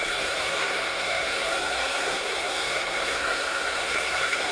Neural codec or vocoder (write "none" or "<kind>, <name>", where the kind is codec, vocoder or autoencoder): codec, SNAC